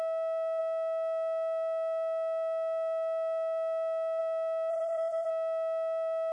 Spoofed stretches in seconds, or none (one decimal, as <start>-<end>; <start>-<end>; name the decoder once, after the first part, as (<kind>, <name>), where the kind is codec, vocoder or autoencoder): 4.7-5.3 (codec, SNAC)